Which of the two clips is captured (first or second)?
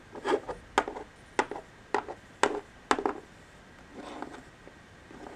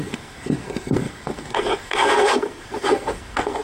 first